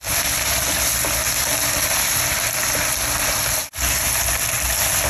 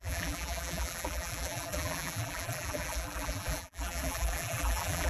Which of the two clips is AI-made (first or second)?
second